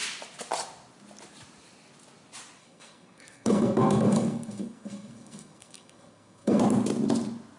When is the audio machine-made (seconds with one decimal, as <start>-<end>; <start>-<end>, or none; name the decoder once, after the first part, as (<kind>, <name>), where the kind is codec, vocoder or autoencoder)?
2.6-6.6 (codec, SNAC)